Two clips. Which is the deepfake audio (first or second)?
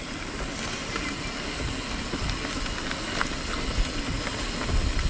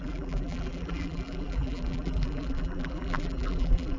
second